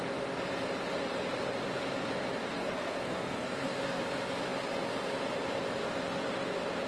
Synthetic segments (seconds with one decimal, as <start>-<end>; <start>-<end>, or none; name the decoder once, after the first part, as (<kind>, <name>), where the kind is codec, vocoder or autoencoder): 2.4-4.0 (codec, SNAC)